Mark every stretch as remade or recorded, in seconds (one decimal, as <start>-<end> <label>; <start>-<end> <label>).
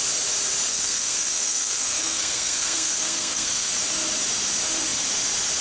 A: 0.0-0.7 recorded; 0.7-3.7 remade; 3.7-5.6 recorded